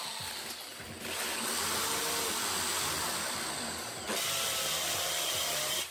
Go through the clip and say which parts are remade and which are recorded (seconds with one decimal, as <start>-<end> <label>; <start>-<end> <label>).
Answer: 0.0-2.7 recorded; 2.7-5.2 remade; 5.2-5.9 recorded